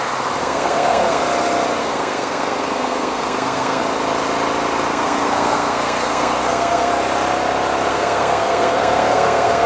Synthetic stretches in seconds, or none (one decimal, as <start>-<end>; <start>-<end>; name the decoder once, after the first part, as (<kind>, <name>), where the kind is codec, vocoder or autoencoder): 0.4-1.2 (codec, SNAC); 1.8-3.8; 4.9-6.9; 7.9-9.7

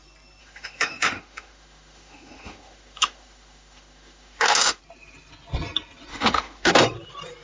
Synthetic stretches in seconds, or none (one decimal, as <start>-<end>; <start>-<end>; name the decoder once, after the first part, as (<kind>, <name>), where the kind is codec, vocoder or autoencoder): 0.4-4.8 (autoencoder, DAC-VAE); 6.1-6.7